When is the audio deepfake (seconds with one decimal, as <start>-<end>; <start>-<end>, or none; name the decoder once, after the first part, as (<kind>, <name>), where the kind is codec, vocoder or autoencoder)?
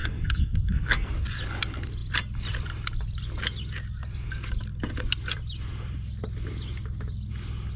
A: 0.0-1.1 (codec, SNAC)